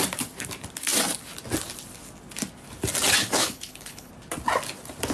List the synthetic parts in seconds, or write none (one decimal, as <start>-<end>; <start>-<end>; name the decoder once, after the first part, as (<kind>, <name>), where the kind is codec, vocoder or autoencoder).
3.2-4.1 (codec, HILCodec)